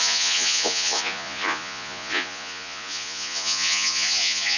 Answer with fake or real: fake